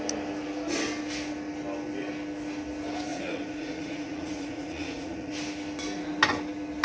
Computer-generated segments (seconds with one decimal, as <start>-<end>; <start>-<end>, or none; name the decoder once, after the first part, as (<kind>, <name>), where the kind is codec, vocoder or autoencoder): 3.1-5.3 (vocoder, Vocos)